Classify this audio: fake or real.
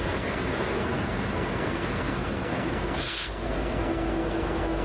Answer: fake